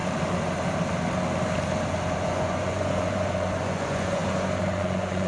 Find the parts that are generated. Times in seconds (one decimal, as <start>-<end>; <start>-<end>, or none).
2.2-5.3